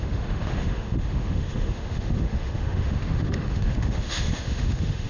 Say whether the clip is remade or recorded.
remade